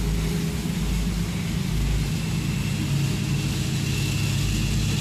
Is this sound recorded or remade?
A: recorded